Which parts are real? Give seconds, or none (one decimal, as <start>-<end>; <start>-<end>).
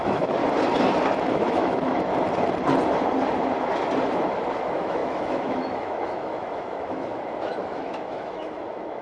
0.4-1.3; 2.1-4.6